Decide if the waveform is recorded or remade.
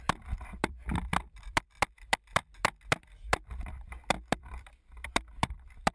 remade